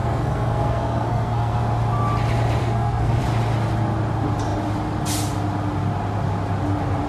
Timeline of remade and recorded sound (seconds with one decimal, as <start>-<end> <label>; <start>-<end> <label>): 0.0-1.6 remade; 1.6-2.6 recorded; 2.6-3.2 remade; 3.2-7.1 recorded